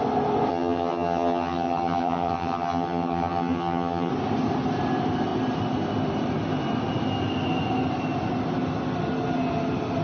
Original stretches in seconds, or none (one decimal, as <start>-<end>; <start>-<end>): 0.0-0.5; 4.1-10.0